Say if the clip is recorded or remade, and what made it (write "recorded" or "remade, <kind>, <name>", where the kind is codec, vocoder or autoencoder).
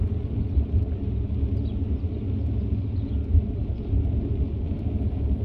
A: recorded